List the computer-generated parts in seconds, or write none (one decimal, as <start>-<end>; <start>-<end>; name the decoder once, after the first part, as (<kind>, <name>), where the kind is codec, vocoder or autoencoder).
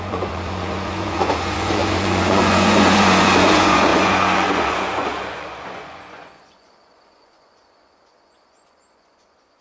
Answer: 0.0-9.6 (vocoder, Vocos)